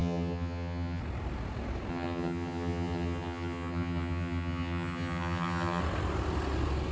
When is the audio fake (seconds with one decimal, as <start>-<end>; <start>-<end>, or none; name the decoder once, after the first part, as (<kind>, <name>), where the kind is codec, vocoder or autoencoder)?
0.0-1.0 (vocoder, HiFi-GAN); 1.9-5.8